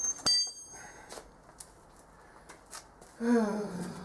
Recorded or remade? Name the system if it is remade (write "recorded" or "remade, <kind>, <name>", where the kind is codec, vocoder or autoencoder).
recorded